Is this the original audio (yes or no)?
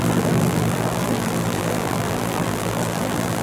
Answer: no